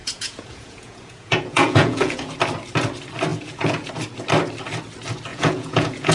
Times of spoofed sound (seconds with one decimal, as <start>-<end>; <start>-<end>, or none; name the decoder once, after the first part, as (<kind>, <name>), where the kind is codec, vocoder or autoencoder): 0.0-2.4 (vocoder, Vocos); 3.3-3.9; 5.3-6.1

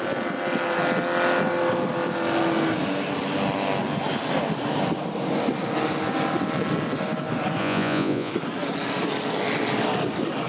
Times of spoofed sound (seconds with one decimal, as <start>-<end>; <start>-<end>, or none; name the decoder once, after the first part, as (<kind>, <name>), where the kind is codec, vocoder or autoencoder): 7.6-8.3 (vocoder, Vocos)

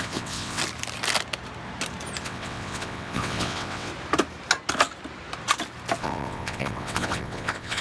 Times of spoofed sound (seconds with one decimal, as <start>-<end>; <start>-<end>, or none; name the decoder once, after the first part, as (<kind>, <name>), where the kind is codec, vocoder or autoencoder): 0.0-0.6 (vocoder, WaveNeXt); 2.2-3.9; 6.0-7.8

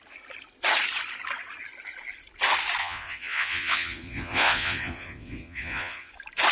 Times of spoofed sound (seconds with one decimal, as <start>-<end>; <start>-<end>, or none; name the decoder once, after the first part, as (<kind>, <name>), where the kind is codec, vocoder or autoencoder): 2.8-6.1 (vocoder, Vocos)

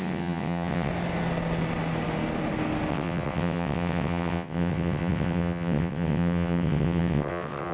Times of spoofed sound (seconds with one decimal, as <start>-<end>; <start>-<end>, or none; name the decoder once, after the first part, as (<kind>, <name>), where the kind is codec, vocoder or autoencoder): 0.0-0.9 (vocoder, WaveNeXt); 2.9-7.7

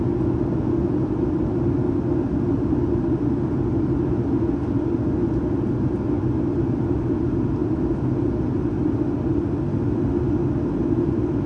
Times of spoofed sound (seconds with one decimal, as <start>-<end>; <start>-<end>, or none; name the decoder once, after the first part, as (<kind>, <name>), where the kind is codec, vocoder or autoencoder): none

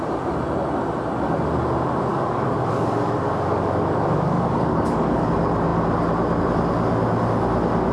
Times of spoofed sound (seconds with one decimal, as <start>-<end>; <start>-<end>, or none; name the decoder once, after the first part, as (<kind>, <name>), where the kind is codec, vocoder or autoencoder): 2.1-5.3 (codec, DAC)